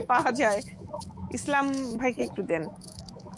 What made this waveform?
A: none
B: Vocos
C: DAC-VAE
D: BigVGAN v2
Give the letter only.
C